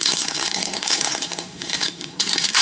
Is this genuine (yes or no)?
no